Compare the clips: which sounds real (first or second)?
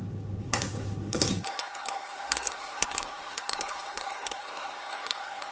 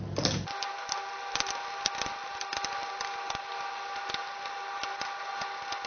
second